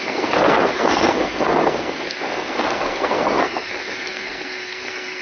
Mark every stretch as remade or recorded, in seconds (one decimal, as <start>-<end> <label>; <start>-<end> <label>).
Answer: 0.0-5.2 remade